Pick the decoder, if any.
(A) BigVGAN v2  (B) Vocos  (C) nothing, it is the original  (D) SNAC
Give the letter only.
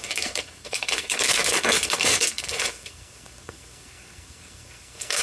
D